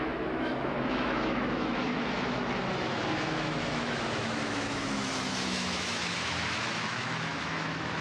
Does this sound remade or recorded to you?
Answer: remade